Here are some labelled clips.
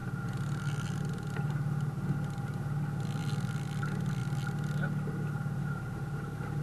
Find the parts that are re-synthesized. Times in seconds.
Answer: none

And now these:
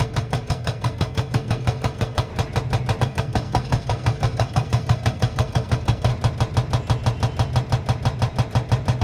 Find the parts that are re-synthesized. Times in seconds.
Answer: 0.0-2.3; 3.0-6.1

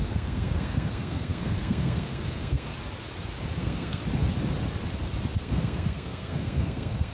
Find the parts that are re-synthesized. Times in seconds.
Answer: 0.0-2.7; 3.6-4.0; 5.4-7.1